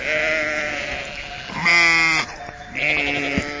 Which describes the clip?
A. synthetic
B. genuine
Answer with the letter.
B